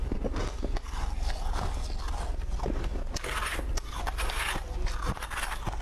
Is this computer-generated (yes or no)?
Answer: no